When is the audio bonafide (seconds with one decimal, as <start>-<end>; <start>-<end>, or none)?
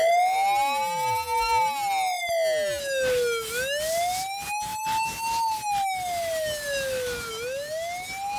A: 0.0-8.4